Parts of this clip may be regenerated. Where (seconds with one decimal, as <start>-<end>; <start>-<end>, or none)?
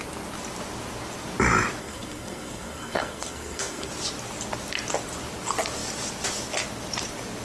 1.8-3.9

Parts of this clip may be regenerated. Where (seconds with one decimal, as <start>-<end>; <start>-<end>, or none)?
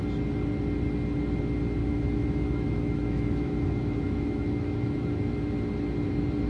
1.8-5.5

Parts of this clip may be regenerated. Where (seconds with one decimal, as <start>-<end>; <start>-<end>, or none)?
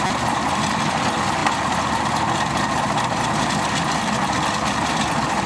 none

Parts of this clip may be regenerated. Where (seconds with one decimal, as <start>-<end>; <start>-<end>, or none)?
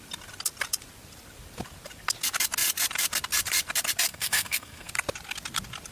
4.1-4.9